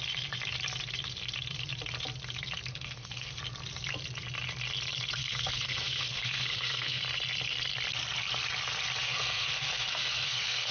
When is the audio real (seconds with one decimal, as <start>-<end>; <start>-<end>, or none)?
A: 0.0-2.7; 3.4-5.2; 7.0-9.0